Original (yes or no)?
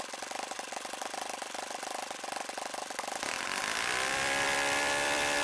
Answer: no